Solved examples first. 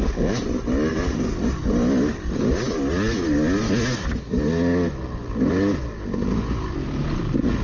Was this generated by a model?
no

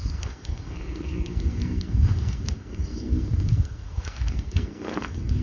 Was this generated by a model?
yes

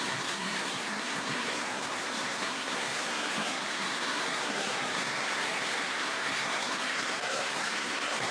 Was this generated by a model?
yes